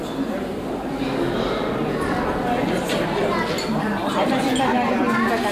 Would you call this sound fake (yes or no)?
no